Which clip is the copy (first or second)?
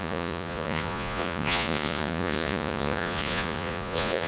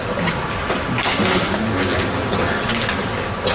first